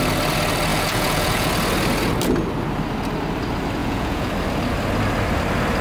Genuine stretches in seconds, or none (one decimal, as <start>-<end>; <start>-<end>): 0.0-0.7; 1.5-3.8; 4.3-5.8